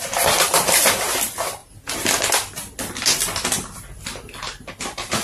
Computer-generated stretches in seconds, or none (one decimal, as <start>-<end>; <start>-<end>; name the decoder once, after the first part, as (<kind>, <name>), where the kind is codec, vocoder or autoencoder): 0.0-1.6 (vocoder, BigVGAN v2); 4.7-5.2